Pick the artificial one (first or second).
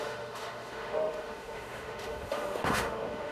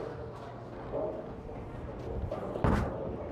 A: first